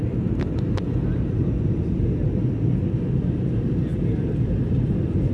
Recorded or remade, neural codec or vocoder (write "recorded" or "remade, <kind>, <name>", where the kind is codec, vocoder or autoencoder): recorded